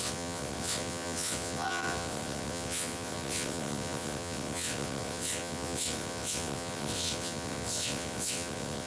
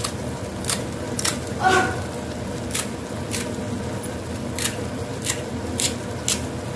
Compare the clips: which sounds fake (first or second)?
first